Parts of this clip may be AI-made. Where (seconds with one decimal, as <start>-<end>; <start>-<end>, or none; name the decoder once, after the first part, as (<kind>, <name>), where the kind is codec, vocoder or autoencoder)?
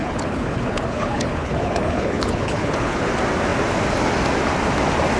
0.0-3.1 (codec, HILCodec)